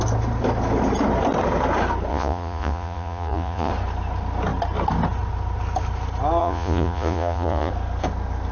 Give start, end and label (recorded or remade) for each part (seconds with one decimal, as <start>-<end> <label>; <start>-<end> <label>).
0.0-2.1 recorded; 2.1-3.7 remade; 3.7-6.4 recorded; 6.4-7.7 remade; 7.7-8.5 recorded